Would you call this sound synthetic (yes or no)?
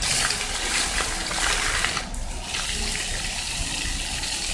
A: no